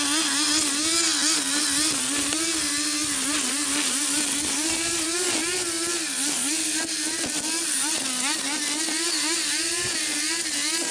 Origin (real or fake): real